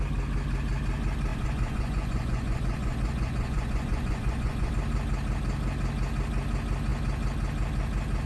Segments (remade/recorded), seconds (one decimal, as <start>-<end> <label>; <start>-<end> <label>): 0.0-1.3 recorded; 1.3-4.7 remade; 4.7-8.3 recorded